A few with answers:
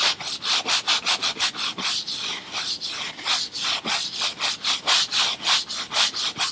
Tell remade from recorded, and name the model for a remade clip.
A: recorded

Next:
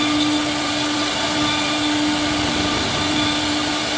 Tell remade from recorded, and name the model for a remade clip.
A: recorded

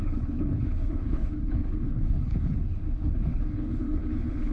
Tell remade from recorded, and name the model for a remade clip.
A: remade, codec, HILCodec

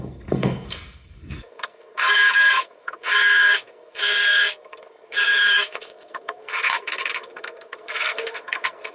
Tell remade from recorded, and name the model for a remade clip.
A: remade, codec, SNAC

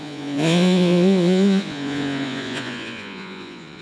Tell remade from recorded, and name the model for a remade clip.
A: remade, vocoder, Vocos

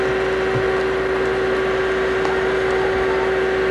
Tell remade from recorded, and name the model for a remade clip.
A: recorded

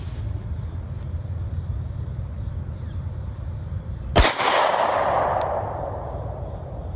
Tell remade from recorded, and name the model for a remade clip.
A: recorded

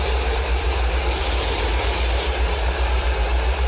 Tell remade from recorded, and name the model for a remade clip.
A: remade, vocoder, BigVGAN v2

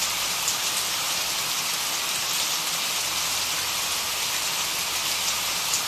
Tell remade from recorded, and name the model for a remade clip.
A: recorded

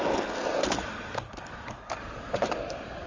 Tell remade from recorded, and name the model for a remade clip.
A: recorded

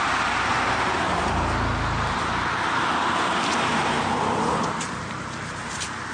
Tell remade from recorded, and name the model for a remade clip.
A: recorded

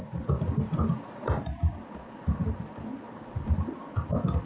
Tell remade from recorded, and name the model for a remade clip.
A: recorded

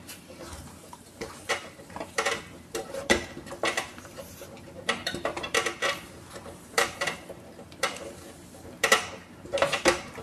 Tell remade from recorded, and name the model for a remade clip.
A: remade, vocoder, BigVGAN v2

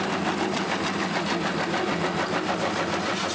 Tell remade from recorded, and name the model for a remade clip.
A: recorded